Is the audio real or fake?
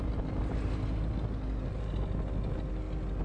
real